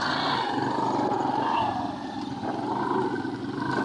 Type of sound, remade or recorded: recorded